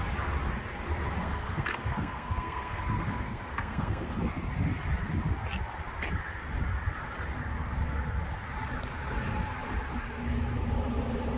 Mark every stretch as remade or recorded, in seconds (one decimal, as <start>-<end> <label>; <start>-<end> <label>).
0.0-1.2 recorded; 1.2-4.2 remade; 4.2-11.4 recorded